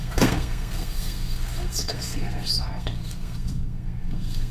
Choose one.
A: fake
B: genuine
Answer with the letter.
A